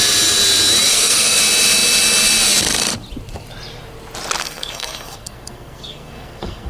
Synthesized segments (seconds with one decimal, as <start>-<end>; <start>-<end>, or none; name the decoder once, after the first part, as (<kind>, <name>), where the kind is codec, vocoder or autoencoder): 0.9-1.4 (codec, SNAC); 4.4-6.7